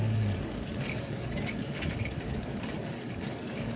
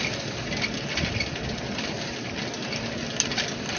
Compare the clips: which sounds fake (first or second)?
first